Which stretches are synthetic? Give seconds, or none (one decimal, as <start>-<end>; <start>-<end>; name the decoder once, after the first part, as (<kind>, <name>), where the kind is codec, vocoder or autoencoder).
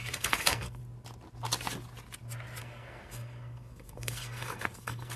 0.0-0.8 (codec, SNAC); 2.6-5.2